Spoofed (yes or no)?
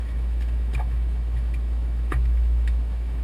yes